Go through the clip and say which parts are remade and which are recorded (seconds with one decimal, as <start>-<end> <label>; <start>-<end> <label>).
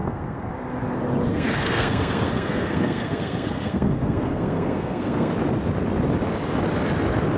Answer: 0.0-0.5 remade; 0.5-1.3 recorded; 1.3-5.3 remade; 5.3-7.4 recorded